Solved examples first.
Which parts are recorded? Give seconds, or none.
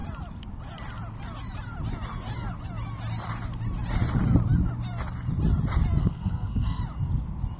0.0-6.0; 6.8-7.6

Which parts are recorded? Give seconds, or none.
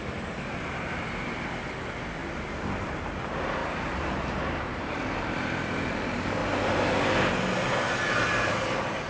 2.2-2.8; 6.4-8.1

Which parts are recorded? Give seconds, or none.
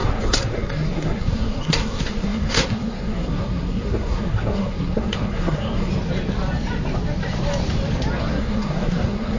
5.9-8.2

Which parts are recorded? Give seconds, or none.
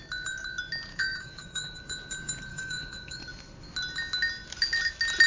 0.0-0.9; 1.8-2.5; 3.2-5.3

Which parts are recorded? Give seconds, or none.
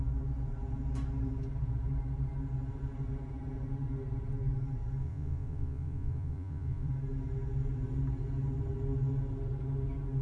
0.0-5.0; 6.9-10.2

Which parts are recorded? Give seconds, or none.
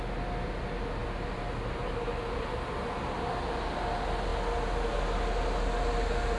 0.0-6.4